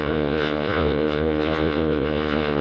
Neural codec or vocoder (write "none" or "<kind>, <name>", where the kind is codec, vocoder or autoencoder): vocoder, Vocos